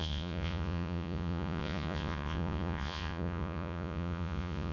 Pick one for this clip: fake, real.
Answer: fake